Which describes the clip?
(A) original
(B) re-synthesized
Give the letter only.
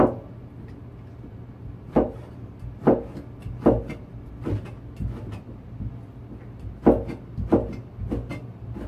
A